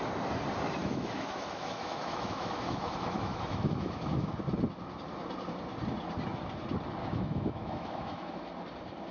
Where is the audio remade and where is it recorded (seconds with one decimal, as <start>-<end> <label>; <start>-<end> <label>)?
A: 0.0-0.8 recorded; 0.8-4.3 remade; 4.3-7.0 recorded; 7.0-8.3 remade; 8.3-9.1 recorded